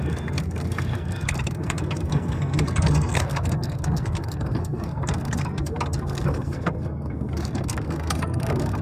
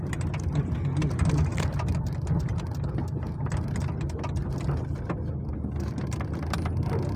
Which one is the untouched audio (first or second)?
second